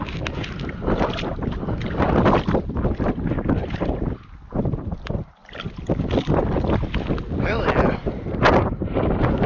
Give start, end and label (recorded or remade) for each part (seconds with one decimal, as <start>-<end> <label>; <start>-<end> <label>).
0.0-9.5 recorded